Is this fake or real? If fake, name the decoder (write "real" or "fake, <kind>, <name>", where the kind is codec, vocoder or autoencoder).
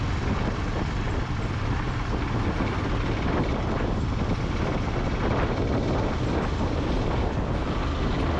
real